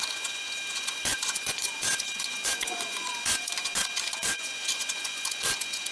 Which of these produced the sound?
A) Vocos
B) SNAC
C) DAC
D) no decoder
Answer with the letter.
A